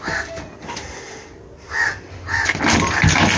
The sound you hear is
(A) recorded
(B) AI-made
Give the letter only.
A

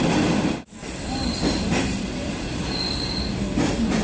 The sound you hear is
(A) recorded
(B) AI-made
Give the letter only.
A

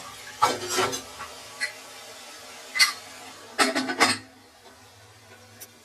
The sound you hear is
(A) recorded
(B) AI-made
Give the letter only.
A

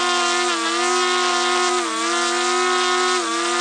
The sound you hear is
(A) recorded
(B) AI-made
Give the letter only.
A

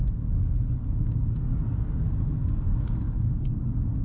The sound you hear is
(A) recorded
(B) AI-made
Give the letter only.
A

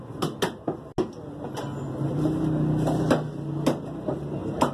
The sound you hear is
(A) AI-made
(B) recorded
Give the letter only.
B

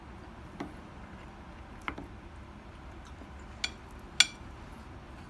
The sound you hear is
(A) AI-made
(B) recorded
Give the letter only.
B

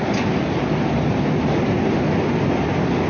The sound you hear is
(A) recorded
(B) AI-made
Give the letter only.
A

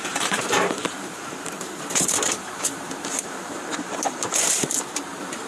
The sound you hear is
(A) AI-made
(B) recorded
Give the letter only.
A